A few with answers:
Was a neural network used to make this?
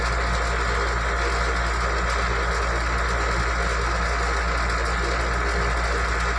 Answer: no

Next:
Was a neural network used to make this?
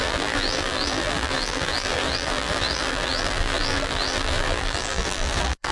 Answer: yes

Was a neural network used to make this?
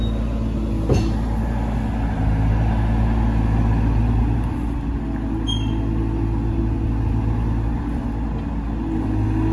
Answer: no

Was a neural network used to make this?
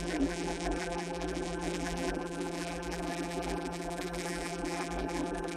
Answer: yes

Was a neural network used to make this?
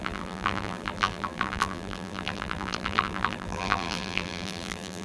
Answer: yes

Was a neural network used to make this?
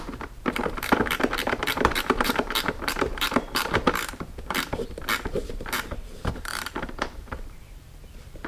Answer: yes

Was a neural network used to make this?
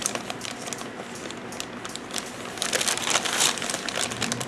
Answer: no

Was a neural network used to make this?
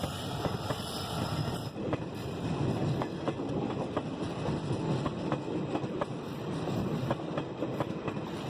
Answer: no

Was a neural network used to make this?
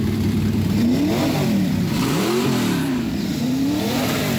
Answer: yes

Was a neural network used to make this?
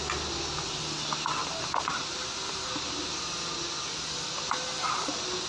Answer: no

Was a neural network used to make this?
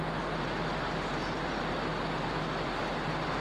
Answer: no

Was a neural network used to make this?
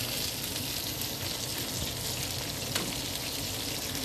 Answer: no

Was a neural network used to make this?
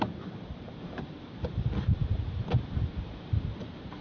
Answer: yes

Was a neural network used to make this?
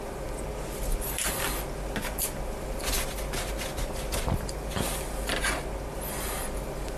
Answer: no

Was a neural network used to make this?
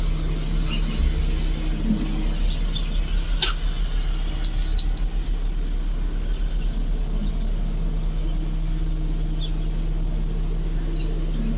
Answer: no